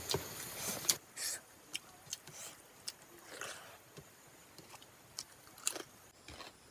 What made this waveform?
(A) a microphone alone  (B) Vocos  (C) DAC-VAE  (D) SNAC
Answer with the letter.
A